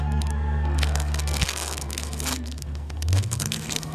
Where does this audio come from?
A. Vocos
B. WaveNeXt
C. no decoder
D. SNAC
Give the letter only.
D